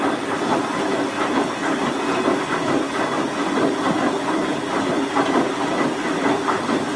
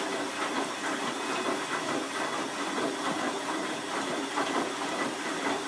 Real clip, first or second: first